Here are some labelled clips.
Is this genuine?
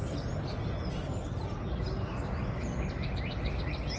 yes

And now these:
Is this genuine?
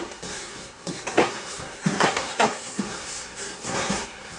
no